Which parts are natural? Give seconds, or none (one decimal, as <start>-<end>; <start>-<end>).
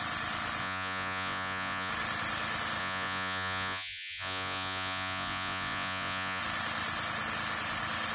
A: 0.0-0.6; 1.9-2.8; 6.4-8.1